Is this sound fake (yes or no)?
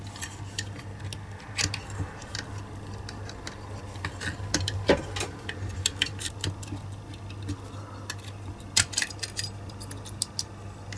no